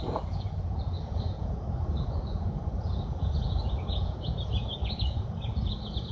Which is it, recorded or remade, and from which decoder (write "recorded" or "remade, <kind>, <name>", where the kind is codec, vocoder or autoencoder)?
remade, vocoder, Vocos